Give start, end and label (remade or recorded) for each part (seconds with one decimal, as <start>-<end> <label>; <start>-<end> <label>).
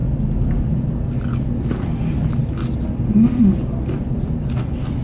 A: 0.0-5.0 recorded